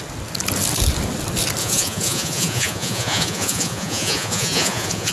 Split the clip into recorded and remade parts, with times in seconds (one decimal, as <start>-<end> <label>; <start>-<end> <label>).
0.0-1.6 recorded; 1.6-5.1 remade